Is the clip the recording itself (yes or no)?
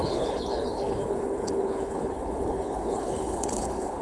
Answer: no